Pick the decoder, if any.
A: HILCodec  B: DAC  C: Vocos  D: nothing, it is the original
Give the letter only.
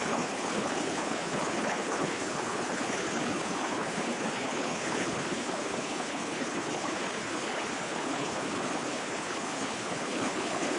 A